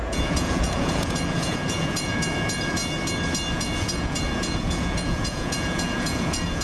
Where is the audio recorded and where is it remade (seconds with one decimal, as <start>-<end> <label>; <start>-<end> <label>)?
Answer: 0.0-2.8 remade; 2.8-3.5 recorded; 3.5-6.6 remade